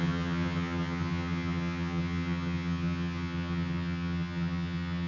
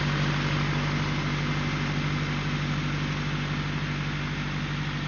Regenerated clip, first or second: first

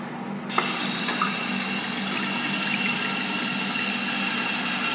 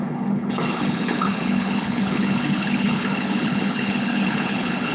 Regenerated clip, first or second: second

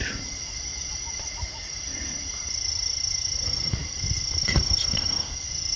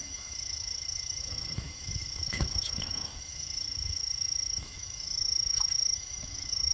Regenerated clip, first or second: second